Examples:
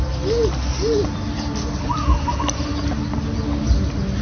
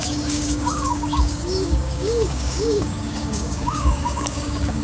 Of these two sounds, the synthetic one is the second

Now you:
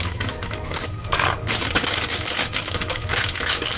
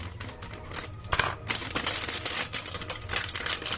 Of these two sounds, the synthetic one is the first